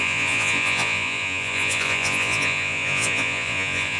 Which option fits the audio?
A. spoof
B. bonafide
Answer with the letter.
A